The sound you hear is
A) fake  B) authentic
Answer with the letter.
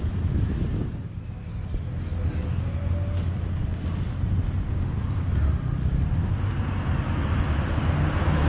B